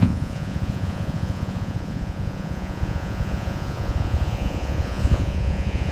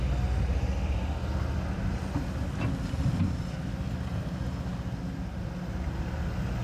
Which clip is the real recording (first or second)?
second